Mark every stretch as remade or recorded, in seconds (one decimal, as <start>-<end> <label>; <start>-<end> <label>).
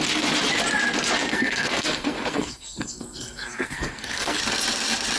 0.0-1.3 recorded; 1.3-4.4 remade; 4.4-5.2 recorded